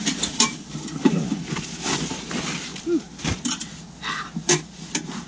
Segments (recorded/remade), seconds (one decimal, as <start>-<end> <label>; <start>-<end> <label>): 0.0-5.3 recorded